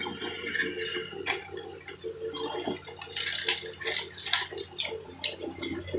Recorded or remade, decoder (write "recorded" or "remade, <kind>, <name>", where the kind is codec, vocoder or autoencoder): recorded